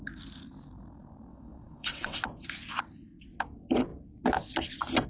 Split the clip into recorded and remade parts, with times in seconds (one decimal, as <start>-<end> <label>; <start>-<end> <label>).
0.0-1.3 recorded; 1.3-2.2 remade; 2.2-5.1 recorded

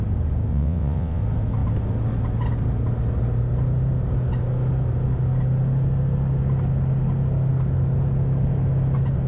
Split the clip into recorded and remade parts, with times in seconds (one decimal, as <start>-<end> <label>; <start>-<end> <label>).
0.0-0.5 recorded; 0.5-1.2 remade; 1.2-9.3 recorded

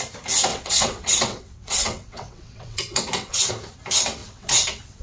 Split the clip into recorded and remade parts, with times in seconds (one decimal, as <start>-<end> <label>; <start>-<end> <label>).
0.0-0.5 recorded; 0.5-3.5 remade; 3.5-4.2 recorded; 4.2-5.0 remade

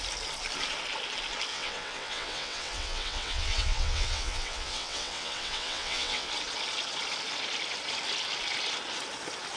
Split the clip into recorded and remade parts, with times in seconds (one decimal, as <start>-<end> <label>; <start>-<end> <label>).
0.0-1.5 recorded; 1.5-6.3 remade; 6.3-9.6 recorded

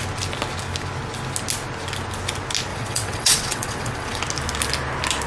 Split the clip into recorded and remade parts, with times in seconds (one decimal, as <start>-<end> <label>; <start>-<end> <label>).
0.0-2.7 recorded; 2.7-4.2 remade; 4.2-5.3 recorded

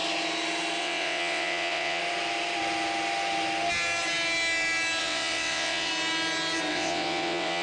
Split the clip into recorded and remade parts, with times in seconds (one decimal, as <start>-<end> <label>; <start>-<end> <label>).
0.0-0.8 recorded; 0.8-2.0 remade; 2.0-5.0 recorded; 5.0-5.9 remade; 5.9-6.7 recorded; 6.7-7.6 remade

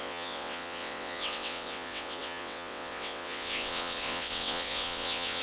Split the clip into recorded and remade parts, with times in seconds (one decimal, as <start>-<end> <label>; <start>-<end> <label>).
0.0-5.4 remade

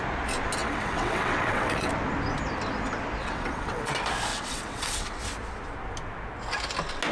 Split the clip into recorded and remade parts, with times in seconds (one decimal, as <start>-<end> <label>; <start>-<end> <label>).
0.0-0.6 recorded; 0.6-1.9 remade; 1.9-3.2 recorded; 3.2-3.9 remade; 3.9-4.3 recorded; 4.3-5.2 remade; 5.2-7.1 recorded